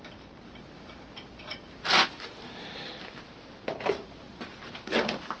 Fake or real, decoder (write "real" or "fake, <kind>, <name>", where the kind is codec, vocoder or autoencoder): real